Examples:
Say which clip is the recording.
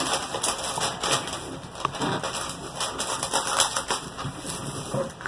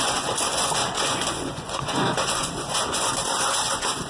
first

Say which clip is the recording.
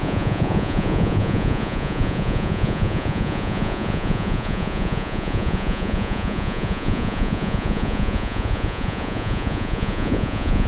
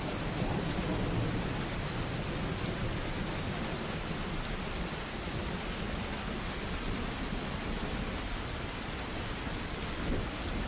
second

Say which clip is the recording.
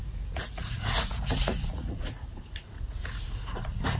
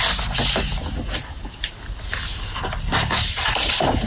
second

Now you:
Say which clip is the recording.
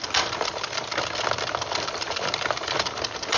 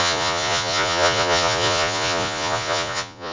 first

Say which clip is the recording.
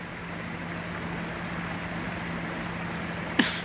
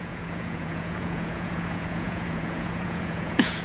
first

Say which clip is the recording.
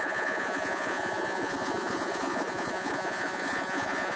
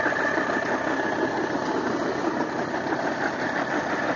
second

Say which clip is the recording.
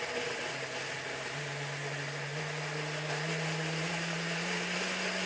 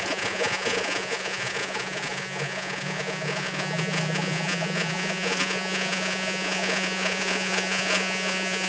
first